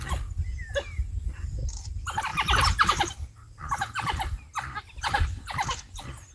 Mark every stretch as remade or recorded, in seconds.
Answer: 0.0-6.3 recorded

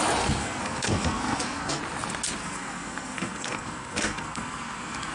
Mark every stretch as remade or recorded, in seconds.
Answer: 0.0-0.4 recorded; 0.4-1.8 remade; 1.8-2.4 recorded; 2.4-5.1 remade

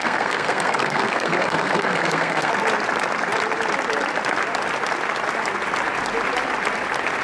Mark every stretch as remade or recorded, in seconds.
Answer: 0.0-2.5 remade; 2.5-7.2 recorded

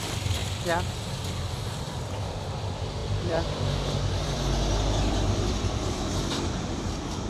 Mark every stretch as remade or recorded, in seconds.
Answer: 0.0-0.4 remade; 0.4-1.7 recorded; 1.7-7.3 remade